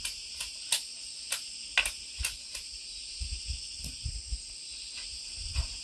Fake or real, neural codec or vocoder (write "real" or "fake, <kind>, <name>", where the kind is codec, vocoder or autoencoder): real